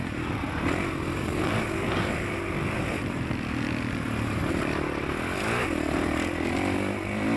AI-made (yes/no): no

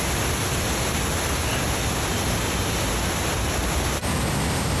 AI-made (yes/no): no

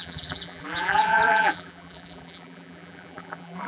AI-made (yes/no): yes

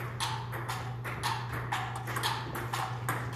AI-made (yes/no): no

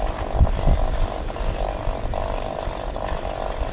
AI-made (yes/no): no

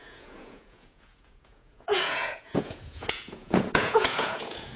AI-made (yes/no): yes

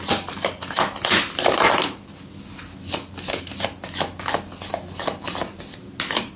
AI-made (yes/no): no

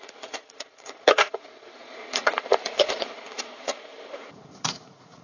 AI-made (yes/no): yes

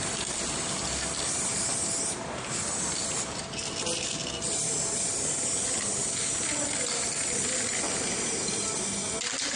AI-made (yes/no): no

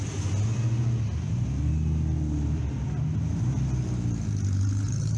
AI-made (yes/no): no